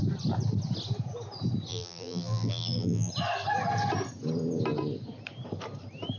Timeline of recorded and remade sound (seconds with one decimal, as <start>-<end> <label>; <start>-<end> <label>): 0.0-1.7 recorded; 1.7-3.1 remade; 3.1-6.2 recorded